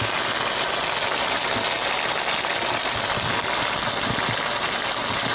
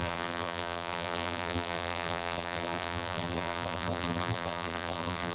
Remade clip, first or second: second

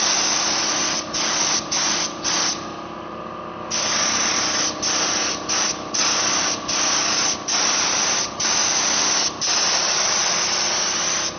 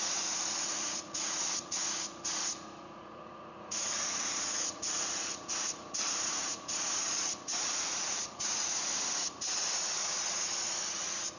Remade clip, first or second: second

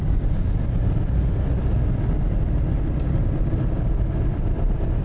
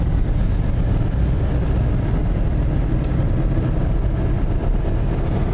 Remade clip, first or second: first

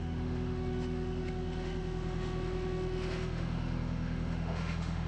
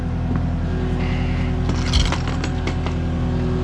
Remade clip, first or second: first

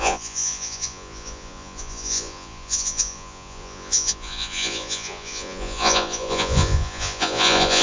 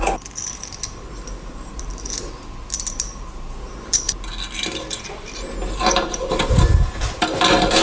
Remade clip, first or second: first